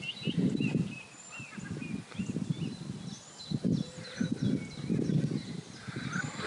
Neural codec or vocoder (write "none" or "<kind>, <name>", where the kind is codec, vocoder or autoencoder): none